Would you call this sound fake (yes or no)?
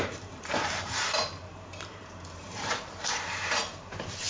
yes